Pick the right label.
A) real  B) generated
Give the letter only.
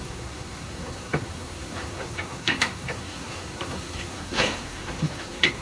B